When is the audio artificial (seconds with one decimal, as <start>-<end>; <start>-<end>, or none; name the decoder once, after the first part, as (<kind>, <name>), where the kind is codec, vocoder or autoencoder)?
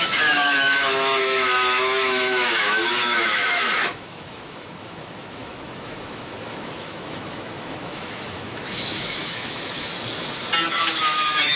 0.0-9.9 (autoencoder, DAC-VAE); 10.7-11.6